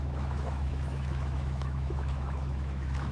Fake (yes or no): yes